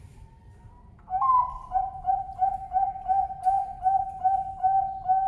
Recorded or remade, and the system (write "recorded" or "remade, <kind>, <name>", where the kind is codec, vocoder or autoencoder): recorded